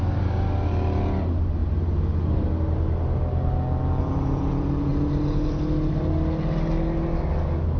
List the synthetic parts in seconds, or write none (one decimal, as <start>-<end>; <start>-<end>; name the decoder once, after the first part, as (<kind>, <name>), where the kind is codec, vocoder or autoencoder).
none